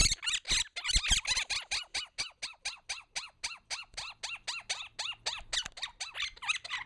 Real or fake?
real